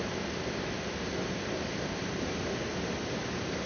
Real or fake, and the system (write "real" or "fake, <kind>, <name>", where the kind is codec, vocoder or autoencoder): real